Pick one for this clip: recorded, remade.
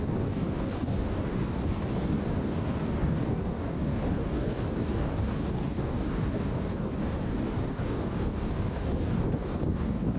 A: remade